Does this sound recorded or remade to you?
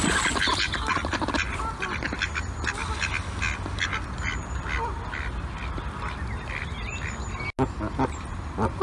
recorded